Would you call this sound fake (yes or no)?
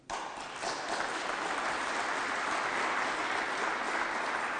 no